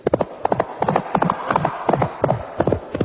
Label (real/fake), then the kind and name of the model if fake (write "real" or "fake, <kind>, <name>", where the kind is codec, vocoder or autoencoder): real